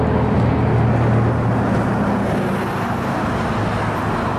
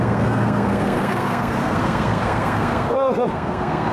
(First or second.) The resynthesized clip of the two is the second